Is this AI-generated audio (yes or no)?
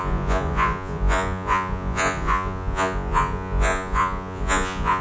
yes